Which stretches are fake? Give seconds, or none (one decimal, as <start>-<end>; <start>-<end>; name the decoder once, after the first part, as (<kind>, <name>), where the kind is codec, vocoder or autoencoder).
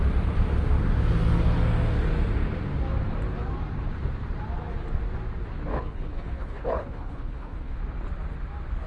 5.7-7.8 (codec, HILCodec)